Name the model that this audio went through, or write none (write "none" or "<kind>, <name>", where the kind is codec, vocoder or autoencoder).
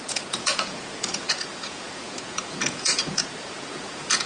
vocoder, Vocos